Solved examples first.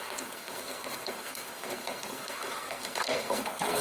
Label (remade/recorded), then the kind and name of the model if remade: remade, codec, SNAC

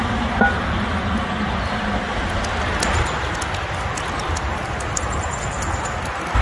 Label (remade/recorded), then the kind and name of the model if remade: recorded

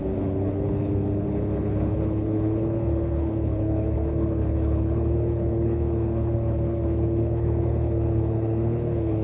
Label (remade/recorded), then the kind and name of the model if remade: remade, codec, HILCodec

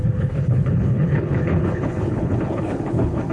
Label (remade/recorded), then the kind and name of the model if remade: remade, codec, HILCodec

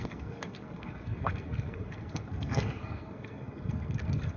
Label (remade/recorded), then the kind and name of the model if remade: remade, codec, SNAC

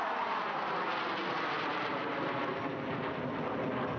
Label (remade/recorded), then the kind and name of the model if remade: recorded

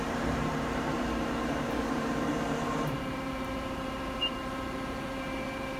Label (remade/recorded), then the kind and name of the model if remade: remade, vocoder, BigVGAN v2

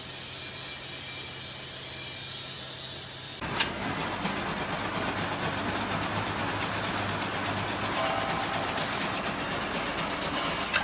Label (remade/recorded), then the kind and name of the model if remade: recorded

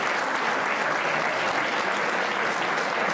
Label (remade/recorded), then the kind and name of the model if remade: recorded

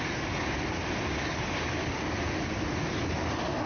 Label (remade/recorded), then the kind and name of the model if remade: recorded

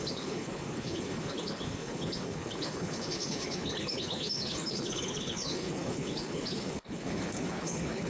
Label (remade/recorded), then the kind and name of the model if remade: remade, codec, HILCodec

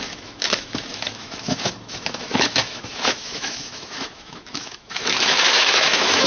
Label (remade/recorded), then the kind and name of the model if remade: remade, autoencoder, DAC-VAE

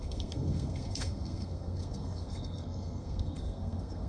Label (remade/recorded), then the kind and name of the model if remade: remade, codec, SNAC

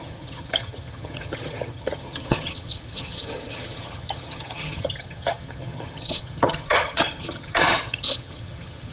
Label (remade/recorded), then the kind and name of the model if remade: remade, vocoder, HiFi-GAN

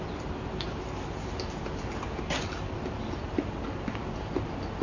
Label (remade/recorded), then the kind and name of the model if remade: recorded